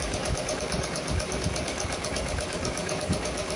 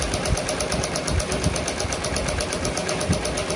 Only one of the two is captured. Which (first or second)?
second